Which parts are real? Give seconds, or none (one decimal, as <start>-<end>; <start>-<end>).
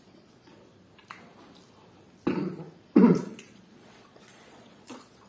0.6-3.1